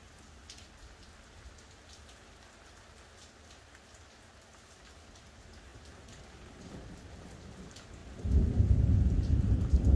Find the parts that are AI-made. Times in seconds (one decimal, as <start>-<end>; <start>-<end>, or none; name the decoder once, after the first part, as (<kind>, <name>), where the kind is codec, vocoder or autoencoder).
none